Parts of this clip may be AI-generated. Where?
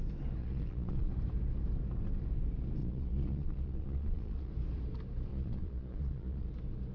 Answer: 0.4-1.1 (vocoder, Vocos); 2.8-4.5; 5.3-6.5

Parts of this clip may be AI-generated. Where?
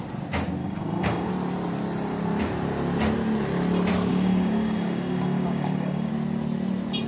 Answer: 0.6-1.3 (codec, DAC); 4.1-6.1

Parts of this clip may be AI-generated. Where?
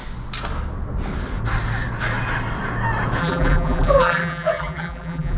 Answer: 3.2-5.4 (vocoder, BigVGAN v2)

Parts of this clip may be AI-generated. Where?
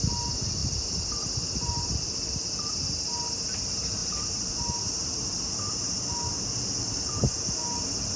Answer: 0.6-2.3 (vocoder, BigVGAN v2); 4.0-4.5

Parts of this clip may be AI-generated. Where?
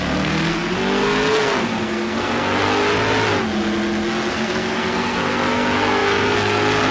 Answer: 0.0-2.8 (codec, SNAC); 4.3-6.9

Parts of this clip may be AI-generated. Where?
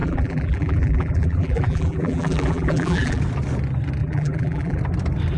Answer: 0.0-3.2 (vocoder, BigVGAN v2); 4.0-4.8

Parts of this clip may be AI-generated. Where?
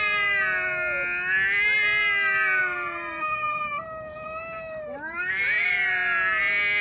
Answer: 2.6-5.7 (vocoder, BigVGAN v2)